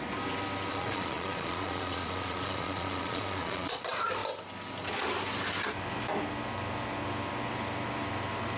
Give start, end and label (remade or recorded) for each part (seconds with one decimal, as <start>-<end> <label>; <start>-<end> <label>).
0.0-0.7 recorded; 0.7-3.8 remade; 3.8-8.6 recorded